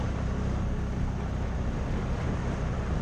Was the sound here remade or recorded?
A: recorded